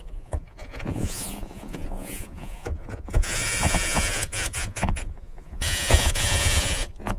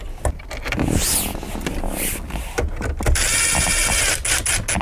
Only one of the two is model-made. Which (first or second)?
first